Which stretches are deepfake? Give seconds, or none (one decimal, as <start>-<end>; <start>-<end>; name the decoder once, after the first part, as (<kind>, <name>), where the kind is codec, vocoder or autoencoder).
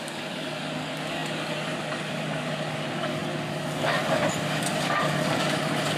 0.0-6.0 (codec, DAC)